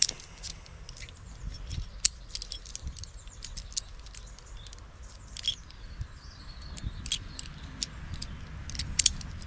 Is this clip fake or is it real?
real